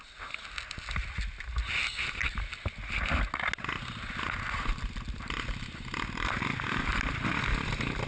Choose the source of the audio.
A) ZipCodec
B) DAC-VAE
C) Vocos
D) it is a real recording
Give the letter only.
D